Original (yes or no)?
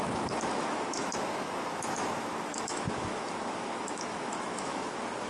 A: no